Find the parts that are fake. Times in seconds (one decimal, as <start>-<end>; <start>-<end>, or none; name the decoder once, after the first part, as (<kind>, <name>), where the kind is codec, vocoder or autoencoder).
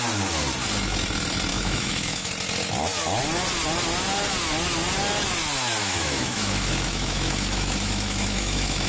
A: 1.5-2.3 (autoencoder, DAC-VAE); 5.8-8.9